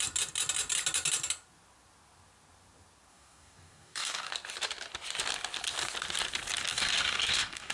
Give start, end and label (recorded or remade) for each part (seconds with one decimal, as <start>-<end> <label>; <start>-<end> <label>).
0.0-3.1 recorded; 3.1-4.3 remade; 4.3-6.7 recorded; 6.7-7.7 remade